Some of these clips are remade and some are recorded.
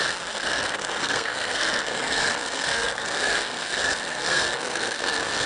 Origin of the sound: remade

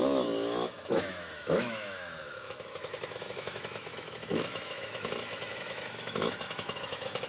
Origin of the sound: remade